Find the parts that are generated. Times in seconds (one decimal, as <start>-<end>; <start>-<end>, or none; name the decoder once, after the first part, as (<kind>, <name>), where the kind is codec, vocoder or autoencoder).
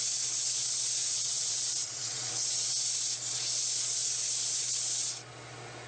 1.0-2.3 (vocoder, WaveNeXt)